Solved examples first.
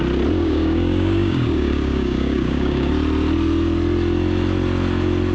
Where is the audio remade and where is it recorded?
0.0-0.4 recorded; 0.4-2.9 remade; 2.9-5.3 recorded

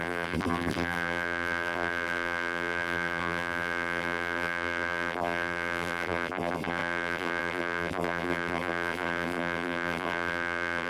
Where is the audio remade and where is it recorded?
0.0-10.9 remade

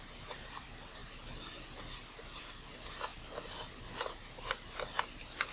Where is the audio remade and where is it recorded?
0.0-5.5 recorded

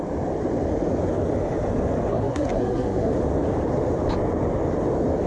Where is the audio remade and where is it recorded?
0.0-2.1 recorded; 2.1-3.1 remade; 3.1-5.3 recorded

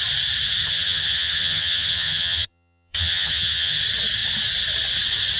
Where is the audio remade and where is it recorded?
0.0-0.6 recorded; 0.6-3.8 remade; 3.8-5.4 recorded

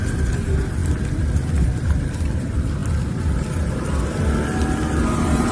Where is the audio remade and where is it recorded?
0.0-5.5 recorded